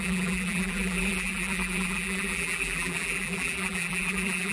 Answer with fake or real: fake